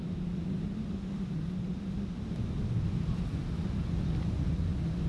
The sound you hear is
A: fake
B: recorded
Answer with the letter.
B